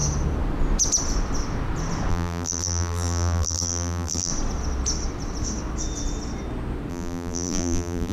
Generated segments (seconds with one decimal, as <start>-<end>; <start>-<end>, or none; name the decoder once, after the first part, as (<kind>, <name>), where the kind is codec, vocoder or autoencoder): 2.1-4.3 (vocoder, BigVGAN v2); 6.9-8.1